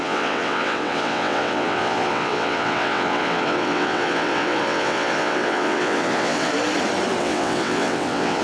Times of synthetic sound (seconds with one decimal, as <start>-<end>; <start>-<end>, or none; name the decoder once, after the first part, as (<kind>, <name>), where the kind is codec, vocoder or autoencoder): 0.0-6.5 (vocoder, WaveNeXt); 7.2-8.4